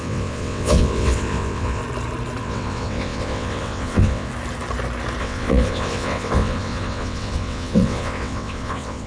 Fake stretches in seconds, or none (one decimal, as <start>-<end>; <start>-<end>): 0.0-1.8; 2.4-4.3; 5.2-9.1